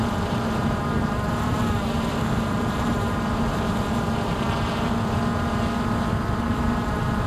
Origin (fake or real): fake